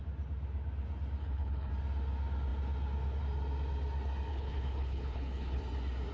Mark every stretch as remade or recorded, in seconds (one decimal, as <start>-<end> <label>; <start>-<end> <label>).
0.0-1.2 recorded; 1.2-1.7 remade; 1.7-4.3 recorded; 4.3-5.6 remade; 5.6-6.1 recorded